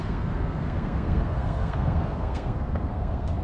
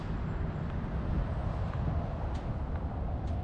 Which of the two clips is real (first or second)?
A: second